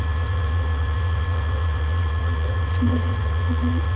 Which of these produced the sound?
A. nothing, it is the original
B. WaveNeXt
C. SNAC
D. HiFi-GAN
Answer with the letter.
B